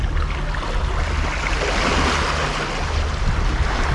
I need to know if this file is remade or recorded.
recorded